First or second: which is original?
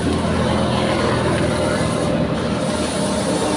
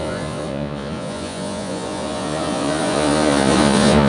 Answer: first